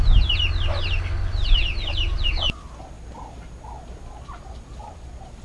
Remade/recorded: recorded